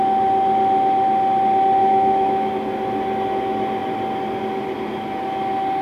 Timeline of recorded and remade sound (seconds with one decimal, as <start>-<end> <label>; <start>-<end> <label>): 0.0-1.8 recorded; 1.8-2.5 remade; 2.5-5.8 recorded